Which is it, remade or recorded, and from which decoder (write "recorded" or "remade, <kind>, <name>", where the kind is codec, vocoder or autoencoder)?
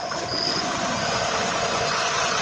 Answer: remade, vocoder, Vocos